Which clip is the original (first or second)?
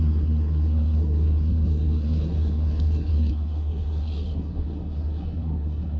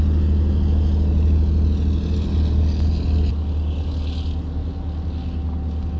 second